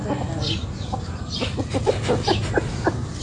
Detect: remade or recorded recorded